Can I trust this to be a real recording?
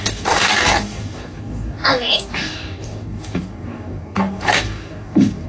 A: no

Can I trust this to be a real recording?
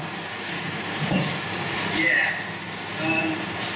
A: yes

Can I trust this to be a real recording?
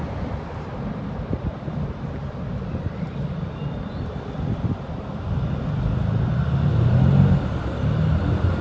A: yes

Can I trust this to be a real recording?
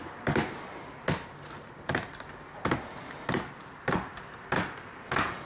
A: yes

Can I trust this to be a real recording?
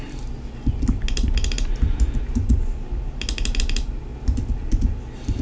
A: yes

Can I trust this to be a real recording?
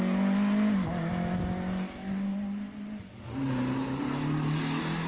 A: yes